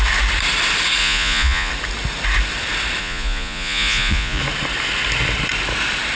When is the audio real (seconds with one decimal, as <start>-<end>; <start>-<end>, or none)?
0.0-1.0; 1.7-3.0; 4.4-6.1